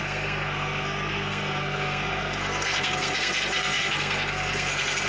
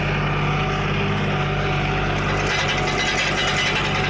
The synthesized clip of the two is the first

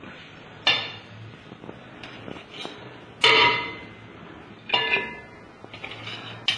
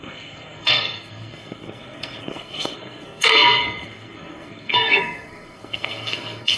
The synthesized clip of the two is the second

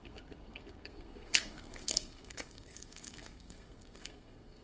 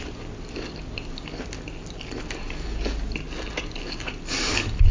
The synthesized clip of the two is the first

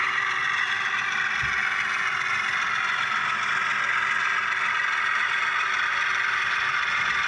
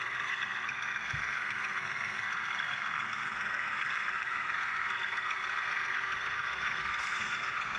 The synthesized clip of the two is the second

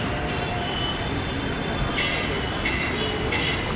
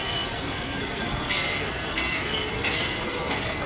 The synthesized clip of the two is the second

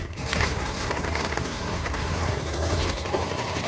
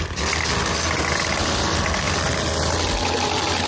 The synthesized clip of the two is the first